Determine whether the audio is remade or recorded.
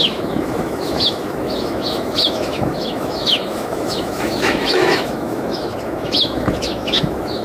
remade